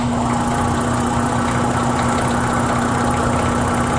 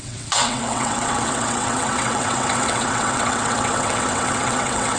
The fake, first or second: second